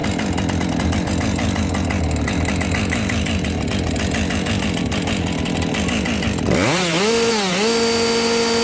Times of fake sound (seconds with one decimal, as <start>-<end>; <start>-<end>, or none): none